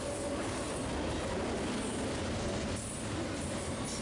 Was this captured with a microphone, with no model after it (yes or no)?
yes